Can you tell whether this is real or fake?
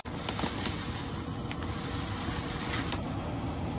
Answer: real